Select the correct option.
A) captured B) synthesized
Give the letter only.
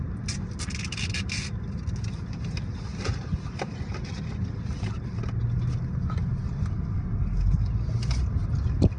A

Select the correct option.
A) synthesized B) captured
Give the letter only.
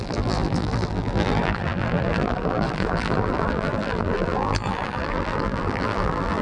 A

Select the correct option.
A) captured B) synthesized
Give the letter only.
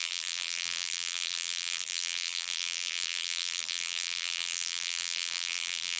B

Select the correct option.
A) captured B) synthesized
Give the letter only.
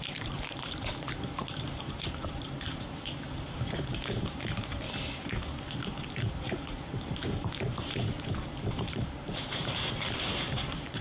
B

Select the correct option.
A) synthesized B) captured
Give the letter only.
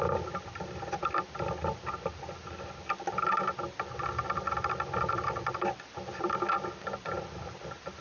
A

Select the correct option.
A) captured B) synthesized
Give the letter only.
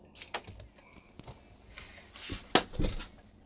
A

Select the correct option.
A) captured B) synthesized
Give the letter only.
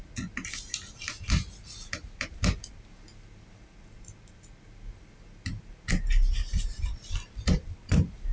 A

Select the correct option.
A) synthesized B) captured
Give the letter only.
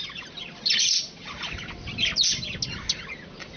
B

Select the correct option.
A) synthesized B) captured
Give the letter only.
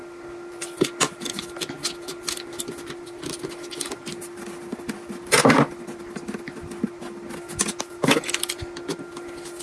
B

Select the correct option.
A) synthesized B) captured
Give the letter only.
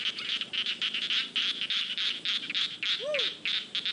A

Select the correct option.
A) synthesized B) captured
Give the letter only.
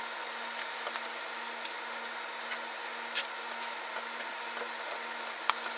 B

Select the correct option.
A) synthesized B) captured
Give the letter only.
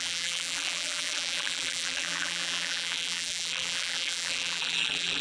A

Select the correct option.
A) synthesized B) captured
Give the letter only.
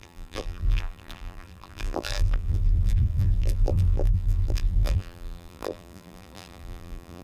A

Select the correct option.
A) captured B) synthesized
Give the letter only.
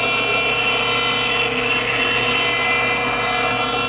A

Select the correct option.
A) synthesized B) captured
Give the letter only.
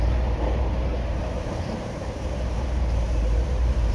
A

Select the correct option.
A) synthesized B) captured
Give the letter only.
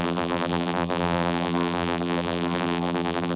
A